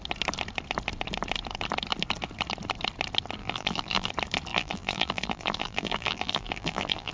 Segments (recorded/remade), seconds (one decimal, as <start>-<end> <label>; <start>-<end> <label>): 0.0-3.4 recorded; 3.4-4.1 remade; 4.1-4.5 recorded; 4.5-7.1 remade